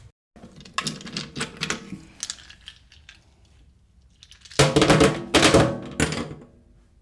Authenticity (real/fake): real